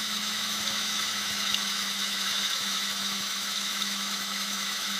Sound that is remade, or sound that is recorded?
remade